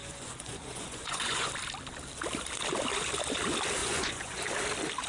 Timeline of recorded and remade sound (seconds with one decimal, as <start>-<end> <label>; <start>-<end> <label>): 0.0-1.5 remade; 1.5-3.8 recorded; 3.8-4.4 remade; 4.4-5.1 recorded

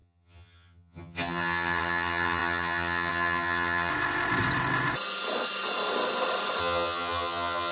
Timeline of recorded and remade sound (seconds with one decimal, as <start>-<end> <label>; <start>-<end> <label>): 0.0-3.9 remade; 3.9-6.6 recorded; 6.6-7.7 remade

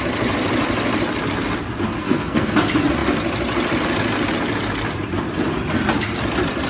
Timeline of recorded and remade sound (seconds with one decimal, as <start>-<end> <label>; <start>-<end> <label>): 0.0-2.0 recorded; 2.0-2.6 remade; 2.6-6.7 recorded

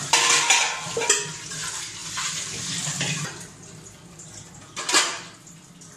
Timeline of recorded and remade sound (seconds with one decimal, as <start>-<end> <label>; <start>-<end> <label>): 0.0-2.0 recorded; 2.0-4.5 remade; 4.5-6.0 recorded

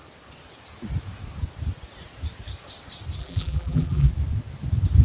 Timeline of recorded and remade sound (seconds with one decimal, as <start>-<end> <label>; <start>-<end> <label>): 0.0-3.2 recorded; 3.2-4.1 remade; 4.1-5.0 recorded

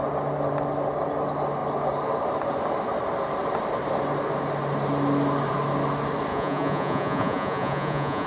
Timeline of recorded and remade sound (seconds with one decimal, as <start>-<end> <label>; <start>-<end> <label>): 0.0-6.3 recorded; 6.3-8.3 remade